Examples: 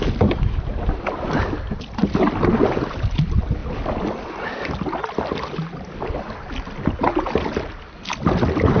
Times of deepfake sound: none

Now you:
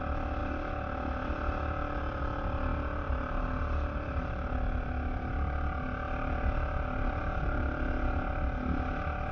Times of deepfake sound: none

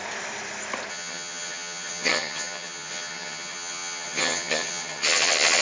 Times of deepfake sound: 0.9-5.6

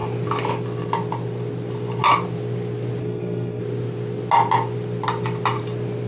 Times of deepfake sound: 3.0-3.6

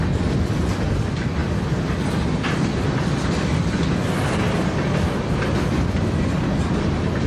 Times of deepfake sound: none

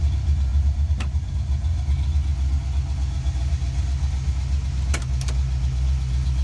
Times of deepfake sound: 0.5-1.3

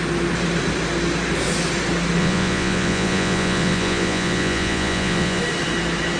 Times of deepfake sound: 2.2-5.4

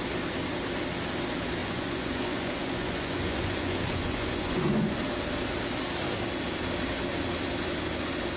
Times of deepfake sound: 1.6-5.0